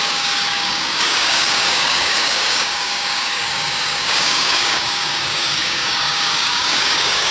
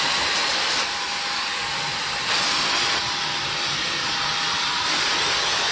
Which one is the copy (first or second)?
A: first